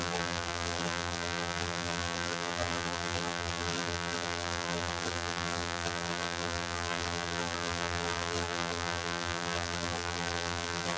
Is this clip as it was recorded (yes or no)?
no